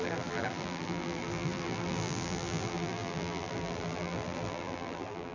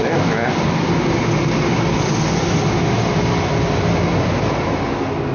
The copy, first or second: first